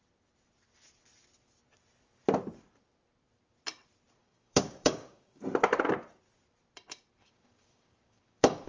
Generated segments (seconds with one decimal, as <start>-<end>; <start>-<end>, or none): 4.2-5.4; 7.2-8.7